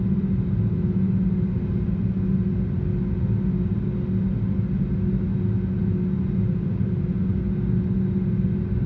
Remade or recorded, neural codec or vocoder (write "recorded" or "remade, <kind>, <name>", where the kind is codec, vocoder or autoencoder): recorded